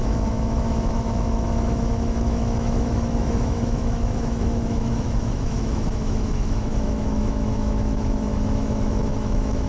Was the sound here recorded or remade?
remade